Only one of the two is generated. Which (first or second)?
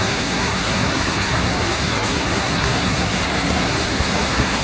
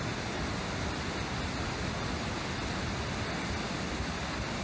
first